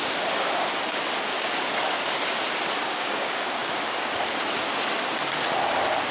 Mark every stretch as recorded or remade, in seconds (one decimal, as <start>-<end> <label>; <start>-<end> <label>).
0.0-2.8 recorded; 2.8-4.1 remade; 4.1-6.1 recorded